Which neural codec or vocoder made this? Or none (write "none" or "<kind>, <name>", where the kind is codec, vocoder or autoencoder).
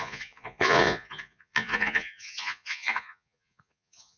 vocoder, Vocos